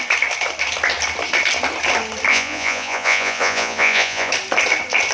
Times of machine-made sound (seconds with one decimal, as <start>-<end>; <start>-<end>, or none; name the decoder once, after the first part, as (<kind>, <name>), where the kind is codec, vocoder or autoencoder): 2.3-4.3 (vocoder, Vocos)